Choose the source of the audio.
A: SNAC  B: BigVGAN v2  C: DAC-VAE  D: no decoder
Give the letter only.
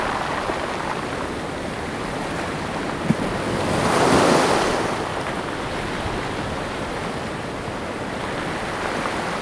D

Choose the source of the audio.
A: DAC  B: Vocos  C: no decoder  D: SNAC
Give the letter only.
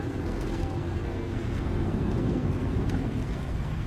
D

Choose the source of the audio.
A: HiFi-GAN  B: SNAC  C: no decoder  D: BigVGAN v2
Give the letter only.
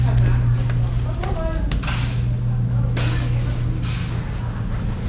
C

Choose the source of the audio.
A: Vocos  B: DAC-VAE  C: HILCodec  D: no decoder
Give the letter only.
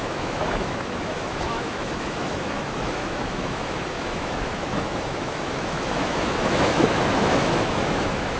B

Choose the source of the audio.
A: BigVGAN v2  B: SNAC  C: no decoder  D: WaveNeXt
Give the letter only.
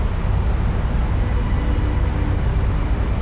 C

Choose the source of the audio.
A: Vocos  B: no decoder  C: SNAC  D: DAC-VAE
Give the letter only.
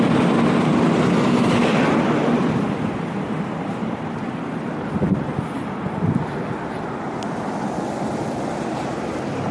B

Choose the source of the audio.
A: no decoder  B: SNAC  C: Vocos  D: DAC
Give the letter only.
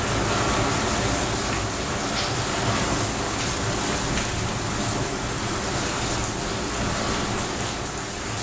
A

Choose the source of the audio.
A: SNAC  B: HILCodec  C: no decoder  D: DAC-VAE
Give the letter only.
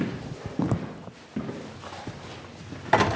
C